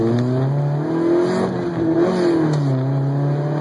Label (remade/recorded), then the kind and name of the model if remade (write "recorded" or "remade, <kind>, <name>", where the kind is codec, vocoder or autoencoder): recorded